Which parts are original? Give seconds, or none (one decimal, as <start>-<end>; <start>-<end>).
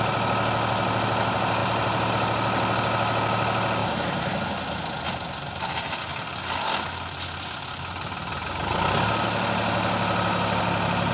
0.0-3.8; 4.4-11.1